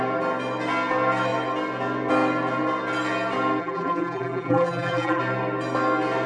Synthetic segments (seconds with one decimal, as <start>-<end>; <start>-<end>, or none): 3.6-5.2